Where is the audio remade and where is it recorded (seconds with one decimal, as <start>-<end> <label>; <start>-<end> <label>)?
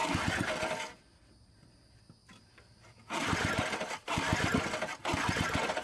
0.0-1.3 remade; 1.3-2.2 recorded; 2.2-4.9 remade; 4.9-5.8 recorded